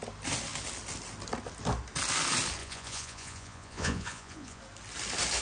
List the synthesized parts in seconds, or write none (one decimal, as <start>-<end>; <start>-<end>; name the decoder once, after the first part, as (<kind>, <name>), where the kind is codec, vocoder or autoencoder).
2.6-4.6 (vocoder, Vocos)